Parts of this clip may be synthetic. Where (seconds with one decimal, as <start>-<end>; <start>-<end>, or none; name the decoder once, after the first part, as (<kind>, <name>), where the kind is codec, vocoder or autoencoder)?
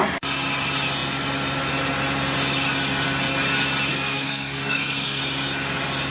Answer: 3.9-5.2 (codec, SNAC)